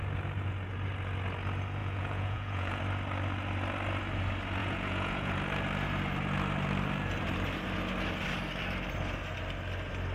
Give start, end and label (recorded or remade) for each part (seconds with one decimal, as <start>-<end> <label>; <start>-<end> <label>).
0.0-1.8 recorded; 1.8-2.8 remade; 2.8-4.6 recorded; 4.6-5.3 remade; 5.3-10.1 recorded